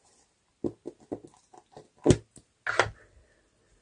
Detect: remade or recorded recorded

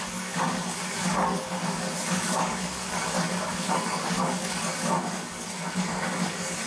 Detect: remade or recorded remade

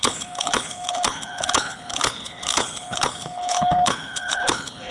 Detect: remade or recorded remade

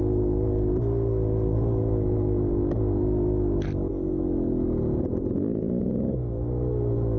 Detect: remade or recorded recorded